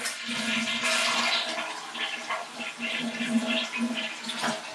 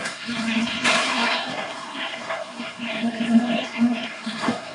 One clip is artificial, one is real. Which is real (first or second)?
first